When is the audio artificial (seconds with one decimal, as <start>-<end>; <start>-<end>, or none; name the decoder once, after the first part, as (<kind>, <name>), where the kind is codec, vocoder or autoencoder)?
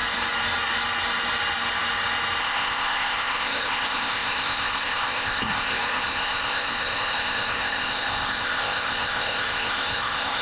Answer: 2.4-10.4 (codec, ZipCodec)